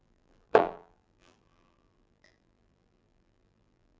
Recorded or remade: remade